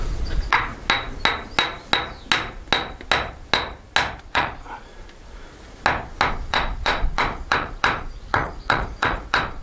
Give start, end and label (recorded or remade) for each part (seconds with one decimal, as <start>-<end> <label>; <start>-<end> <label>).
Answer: 0.0-0.7 remade; 0.7-4.2 recorded; 4.2-4.9 remade; 4.9-6.3 recorded; 6.3-9.6 remade